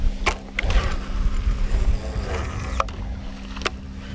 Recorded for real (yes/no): yes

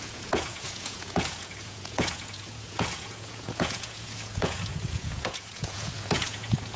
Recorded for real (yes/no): no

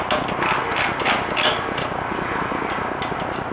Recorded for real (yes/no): yes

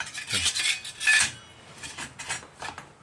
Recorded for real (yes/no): yes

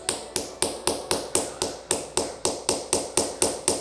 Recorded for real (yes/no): yes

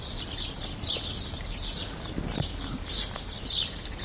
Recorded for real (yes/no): yes